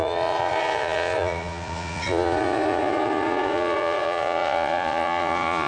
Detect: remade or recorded remade